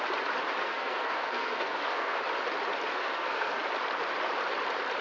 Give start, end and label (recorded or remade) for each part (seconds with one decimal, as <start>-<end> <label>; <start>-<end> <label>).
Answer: 0.0-0.6 recorded; 0.6-2.2 remade; 2.2-2.9 recorded; 2.9-3.6 remade; 3.6-5.0 recorded